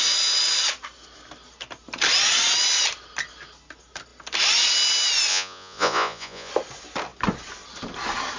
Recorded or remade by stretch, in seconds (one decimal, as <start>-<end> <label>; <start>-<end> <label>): 0.0-5.3 recorded; 5.3-6.5 remade; 6.5-8.4 recorded